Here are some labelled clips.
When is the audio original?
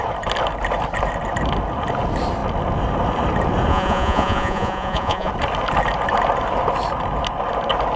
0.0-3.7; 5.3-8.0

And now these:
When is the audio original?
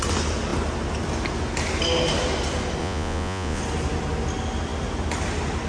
0.0-2.8; 3.6-5.7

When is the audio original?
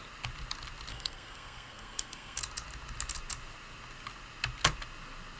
0.0-0.9; 2.4-5.4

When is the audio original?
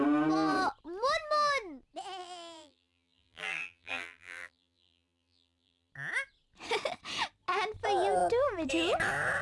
0.0-2.2; 5.9-9.4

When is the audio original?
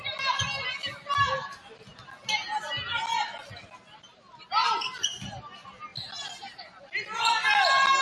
0.0-8.0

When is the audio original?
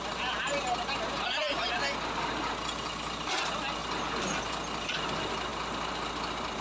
0.0-6.6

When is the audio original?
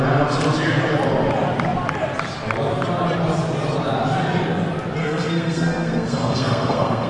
0.0-5.0